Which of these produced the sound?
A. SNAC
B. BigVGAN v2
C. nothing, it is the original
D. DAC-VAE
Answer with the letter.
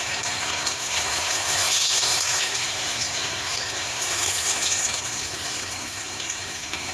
A